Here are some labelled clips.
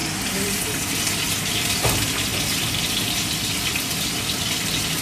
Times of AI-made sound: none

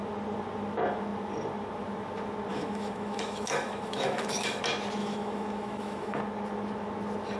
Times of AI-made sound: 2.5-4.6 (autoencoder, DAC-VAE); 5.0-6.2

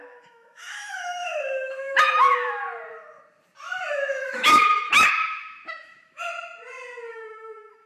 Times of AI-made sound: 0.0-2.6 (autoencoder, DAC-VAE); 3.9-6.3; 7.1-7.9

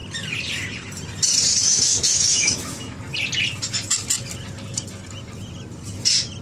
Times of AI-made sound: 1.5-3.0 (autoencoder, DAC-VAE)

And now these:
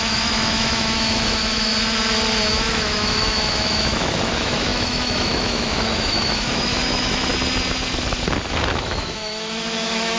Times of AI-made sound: 0.0-1.7 (autoencoder, DAC-VAE); 2.5-7.3; 8.5-10.2

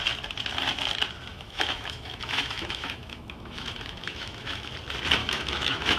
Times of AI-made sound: 1.3-4.7 (autoencoder, DAC-VAE); 5.2-6.0

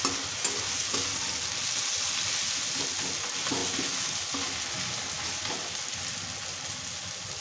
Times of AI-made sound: none